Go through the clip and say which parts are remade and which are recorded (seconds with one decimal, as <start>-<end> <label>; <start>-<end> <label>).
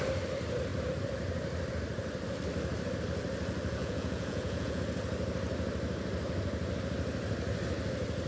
0.0-3.8 recorded; 3.8-4.8 remade; 4.8-8.3 recorded